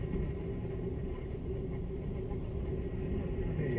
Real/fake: real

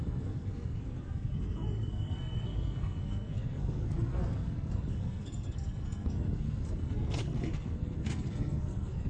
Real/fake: fake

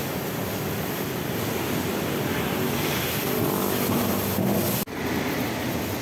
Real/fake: real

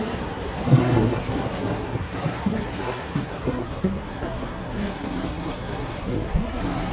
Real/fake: fake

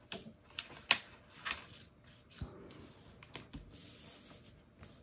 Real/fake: real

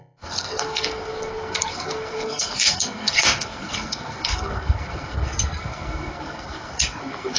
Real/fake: fake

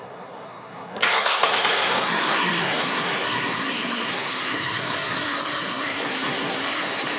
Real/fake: fake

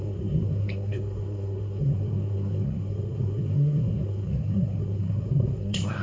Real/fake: fake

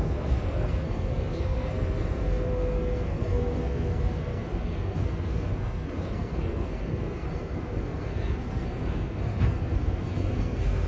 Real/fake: fake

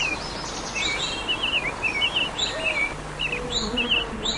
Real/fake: real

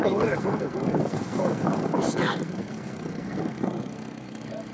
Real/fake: fake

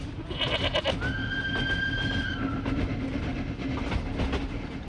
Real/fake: real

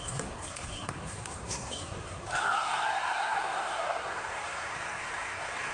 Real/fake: fake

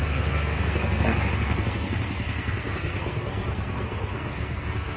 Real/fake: fake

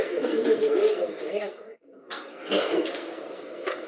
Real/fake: fake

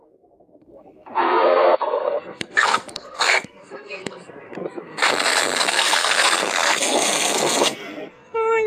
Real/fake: fake